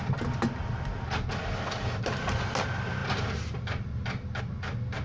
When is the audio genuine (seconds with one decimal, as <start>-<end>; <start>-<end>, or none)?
0.0-5.0